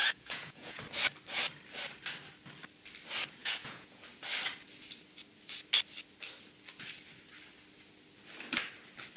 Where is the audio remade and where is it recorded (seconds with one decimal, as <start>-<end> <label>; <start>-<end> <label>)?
0.0-0.8 remade; 0.8-3.4 recorded; 3.4-4.0 remade; 4.0-9.2 recorded